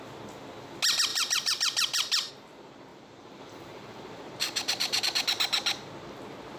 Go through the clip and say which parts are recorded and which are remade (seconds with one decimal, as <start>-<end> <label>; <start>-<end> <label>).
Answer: 0.0-1.1 recorded; 1.1-2.3 remade; 2.3-2.9 recorded; 2.9-5.0 remade; 5.0-6.6 recorded